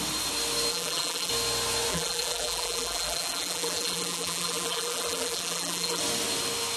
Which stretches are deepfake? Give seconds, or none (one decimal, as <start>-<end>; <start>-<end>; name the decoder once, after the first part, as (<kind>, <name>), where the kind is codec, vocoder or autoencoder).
0.7-1.3 (vocoder, BigVGAN v2); 1.9-6.0